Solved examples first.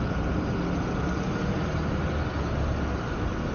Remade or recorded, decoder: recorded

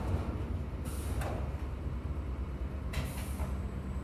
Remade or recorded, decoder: recorded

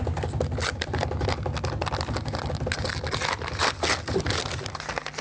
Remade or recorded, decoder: recorded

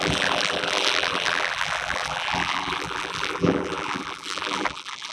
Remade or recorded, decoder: remade, vocoder, BigVGAN v2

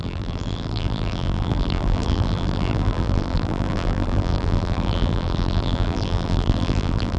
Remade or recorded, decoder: remade, vocoder, BigVGAN v2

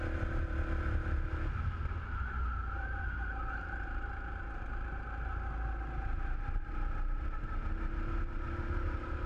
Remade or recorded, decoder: recorded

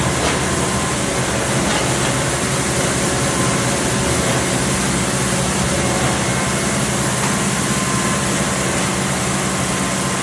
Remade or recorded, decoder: recorded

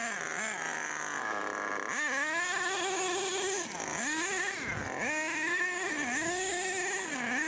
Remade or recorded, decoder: recorded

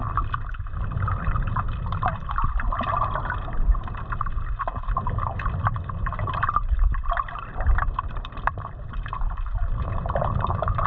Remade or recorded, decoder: remade, vocoder, BigVGAN v2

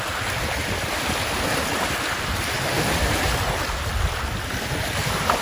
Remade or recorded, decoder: remade, vocoder, BigVGAN v2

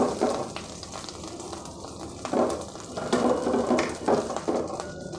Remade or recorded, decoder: remade, vocoder, BigVGAN v2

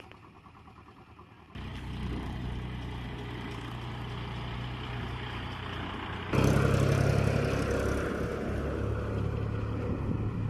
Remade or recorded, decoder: recorded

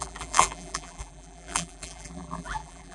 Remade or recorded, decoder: remade, vocoder, BigVGAN v2